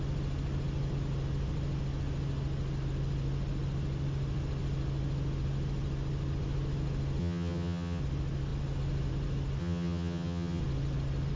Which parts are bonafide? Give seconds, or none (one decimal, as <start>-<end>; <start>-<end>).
0.0-7.2; 8.0-9.6; 10.6-11.4